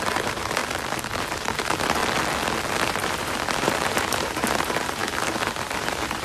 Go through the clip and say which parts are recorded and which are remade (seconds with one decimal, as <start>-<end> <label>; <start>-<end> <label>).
0.0-0.6 remade; 0.6-1.2 recorded; 1.2-2.0 remade; 2.0-2.7 recorded; 2.7-6.2 remade